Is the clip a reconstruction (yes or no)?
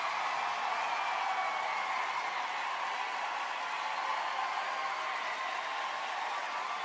no